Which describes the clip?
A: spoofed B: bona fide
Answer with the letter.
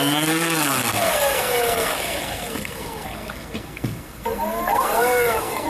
A